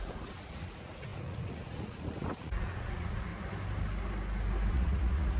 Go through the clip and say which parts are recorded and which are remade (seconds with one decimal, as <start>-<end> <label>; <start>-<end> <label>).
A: 0.0-3.3 remade; 3.3-4.7 recorded; 4.7-5.4 remade